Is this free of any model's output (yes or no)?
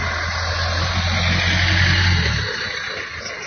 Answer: yes